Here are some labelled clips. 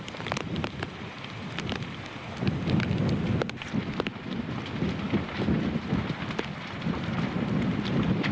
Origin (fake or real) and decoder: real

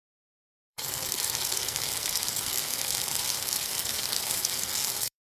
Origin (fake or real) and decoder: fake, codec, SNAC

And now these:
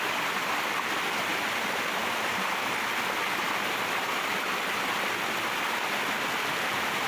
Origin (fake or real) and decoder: real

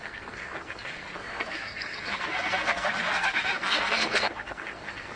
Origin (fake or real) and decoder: fake, codec, SNAC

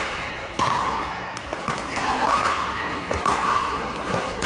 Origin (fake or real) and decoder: fake, codec, SNAC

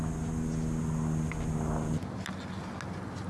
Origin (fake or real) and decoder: real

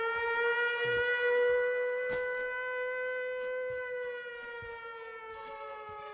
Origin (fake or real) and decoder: real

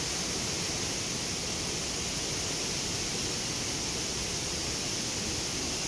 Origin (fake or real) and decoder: real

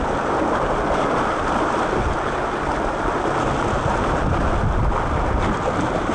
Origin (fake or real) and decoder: real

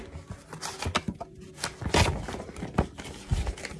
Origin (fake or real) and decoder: real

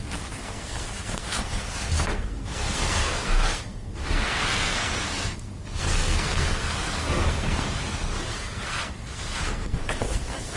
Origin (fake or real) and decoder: fake, codec, SNAC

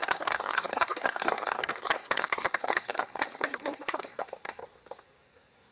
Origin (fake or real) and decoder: fake, codec, SNAC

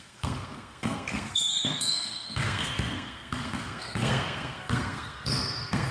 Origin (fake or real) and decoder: fake, codec, SNAC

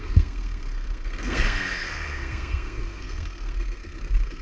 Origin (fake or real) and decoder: fake, codec, SNAC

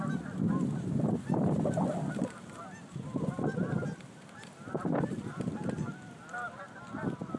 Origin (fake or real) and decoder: real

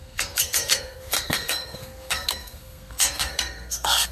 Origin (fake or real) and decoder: fake, codec, SNAC